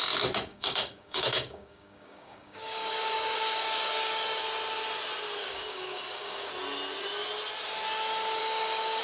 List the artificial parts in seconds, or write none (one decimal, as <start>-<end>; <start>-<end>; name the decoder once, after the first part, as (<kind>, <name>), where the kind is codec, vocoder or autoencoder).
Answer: 0.5-4.4 (codec, DAC); 5.4-6.5; 8.4-9.0